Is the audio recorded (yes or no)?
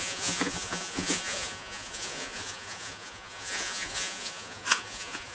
no